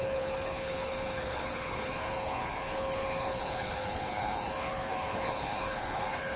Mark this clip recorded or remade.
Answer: remade